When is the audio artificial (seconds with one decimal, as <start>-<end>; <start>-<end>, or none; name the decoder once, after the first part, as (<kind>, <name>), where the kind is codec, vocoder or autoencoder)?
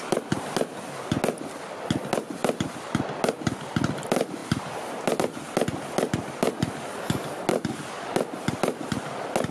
none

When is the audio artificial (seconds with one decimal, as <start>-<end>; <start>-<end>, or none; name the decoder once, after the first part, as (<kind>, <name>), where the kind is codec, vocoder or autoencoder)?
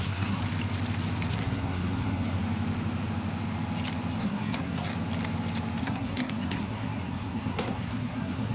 0.0-0.4 (codec, SNAC); 1.3-2.4; 4.2-4.9; 5.8-8.5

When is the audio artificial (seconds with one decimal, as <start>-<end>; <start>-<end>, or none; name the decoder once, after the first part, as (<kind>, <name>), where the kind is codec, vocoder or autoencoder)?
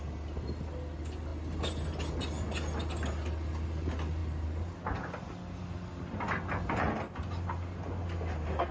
none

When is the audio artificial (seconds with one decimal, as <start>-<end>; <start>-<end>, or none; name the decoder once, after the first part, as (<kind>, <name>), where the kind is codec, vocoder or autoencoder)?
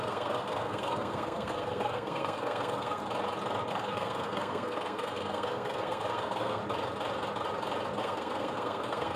0.0-3.0 (codec, SNAC); 3.7-6.6; 8.0-9.2